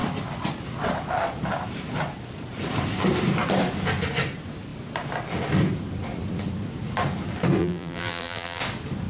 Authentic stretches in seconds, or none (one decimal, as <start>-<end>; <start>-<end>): 0.0-7.6; 8.6-9.1